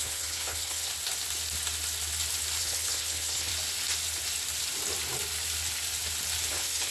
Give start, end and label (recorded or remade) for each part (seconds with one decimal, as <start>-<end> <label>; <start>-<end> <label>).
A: 0.0-0.9 remade; 0.9-2.6 recorded; 2.6-3.5 remade; 3.5-6.5 recorded; 6.5-6.9 remade